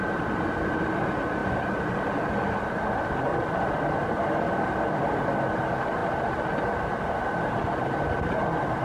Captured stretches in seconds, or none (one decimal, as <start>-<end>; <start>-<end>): 0.0-1.4; 2.3-3.3; 5.4-8.8

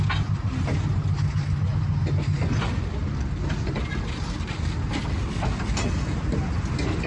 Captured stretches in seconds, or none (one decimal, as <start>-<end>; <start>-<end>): 0.0-7.1

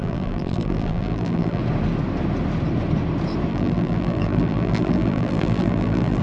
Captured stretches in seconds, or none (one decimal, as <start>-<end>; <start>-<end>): 1.6-3.5

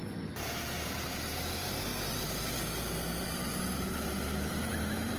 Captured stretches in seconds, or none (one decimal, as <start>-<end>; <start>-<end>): 0.0-0.6; 1.9-3.2

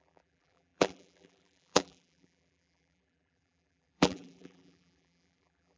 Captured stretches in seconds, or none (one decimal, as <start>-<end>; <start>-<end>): none

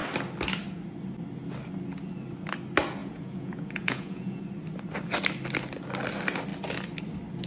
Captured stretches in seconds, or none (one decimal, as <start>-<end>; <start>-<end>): 0.0-3.0; 4.4-7.5